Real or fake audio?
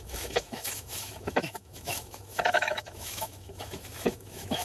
fake